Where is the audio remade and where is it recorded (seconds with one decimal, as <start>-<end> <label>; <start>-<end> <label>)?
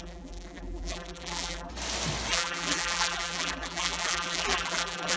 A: 0.0-1.7 remade; 1.7-2.3 recorded; 2.3-5.2 remade